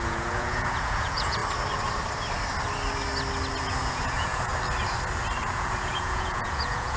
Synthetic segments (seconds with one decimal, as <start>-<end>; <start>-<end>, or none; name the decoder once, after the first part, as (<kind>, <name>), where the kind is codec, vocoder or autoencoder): 0.0-1.4 (vocoder, Vocos); 3.6-4.5; 5.4-7.0

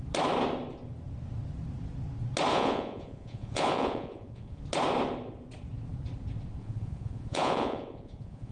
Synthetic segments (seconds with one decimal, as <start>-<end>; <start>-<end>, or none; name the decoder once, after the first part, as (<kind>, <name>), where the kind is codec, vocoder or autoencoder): 2.5-4.6 (vocoder, Vocos); 6.6-8.5

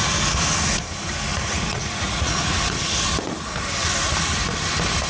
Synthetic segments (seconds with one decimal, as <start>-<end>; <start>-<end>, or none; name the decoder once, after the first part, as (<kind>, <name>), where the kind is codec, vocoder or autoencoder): 1.3-2.8 (vocoder, Vocos)

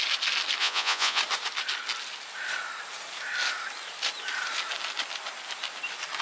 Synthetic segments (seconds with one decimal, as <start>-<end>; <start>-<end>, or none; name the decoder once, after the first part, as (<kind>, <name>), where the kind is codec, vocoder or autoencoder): 0.6-1.2 (vocoder, Vocos)

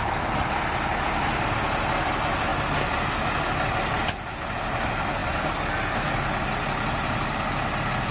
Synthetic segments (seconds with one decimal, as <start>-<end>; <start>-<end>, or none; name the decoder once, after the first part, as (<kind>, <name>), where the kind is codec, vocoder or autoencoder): none

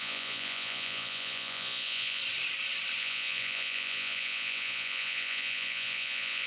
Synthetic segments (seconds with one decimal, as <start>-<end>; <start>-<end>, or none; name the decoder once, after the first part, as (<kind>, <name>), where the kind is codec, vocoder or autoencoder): 0.0-2.2 (vocoder, Vocos); 3.0-6.5